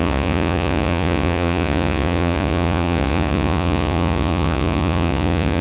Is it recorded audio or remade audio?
remade